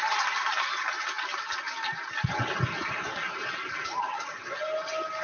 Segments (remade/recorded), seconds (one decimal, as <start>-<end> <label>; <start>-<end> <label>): 0.0-5.2 recorded